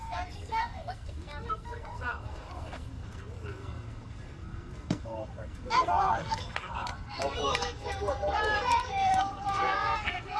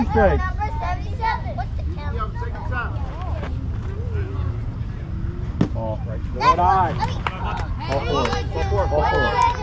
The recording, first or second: second